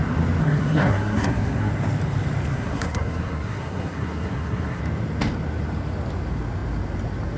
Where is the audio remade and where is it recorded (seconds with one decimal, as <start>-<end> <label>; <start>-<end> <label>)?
0.0-0.4 recorded; 0.4-1.7 remade; 1.7-2.5 recorded; 2.5-4.8 remade; 4.8-7.4 recorded